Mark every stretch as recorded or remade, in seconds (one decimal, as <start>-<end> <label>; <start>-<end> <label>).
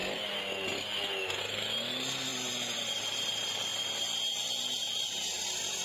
0.0-2.3 recorded; 2.3-2.8 remade; 2.8-5.8 recorded